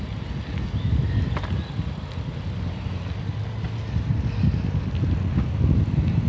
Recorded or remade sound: recorded